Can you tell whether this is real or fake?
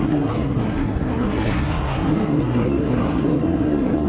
fake